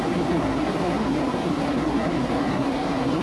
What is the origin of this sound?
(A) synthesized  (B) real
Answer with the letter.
A